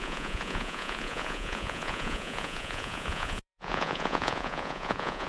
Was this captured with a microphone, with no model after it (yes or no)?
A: no